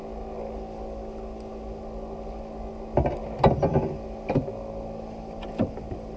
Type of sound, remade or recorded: recorded